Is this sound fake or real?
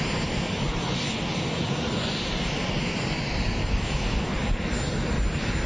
real